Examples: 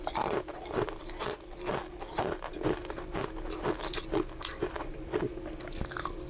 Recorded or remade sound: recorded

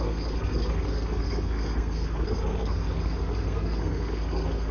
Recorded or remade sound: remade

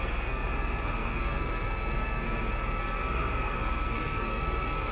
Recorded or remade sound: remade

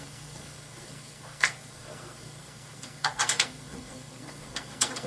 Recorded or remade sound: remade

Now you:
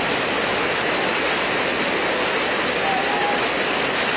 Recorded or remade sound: recorded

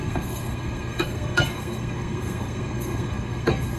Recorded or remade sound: remade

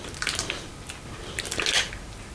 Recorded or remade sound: recorded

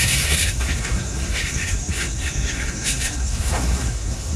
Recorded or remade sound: remade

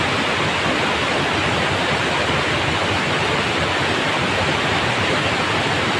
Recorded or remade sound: recorded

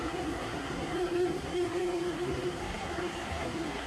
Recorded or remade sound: remade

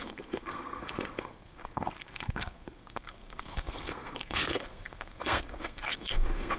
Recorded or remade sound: remade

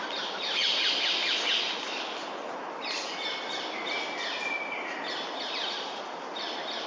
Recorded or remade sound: recorded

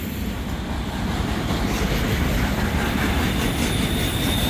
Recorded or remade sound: recorded